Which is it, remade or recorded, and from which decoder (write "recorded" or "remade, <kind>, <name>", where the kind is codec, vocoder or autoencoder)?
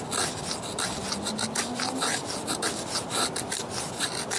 recorded